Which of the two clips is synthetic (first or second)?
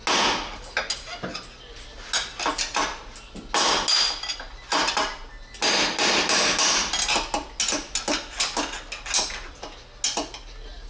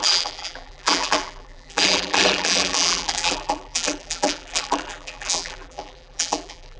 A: second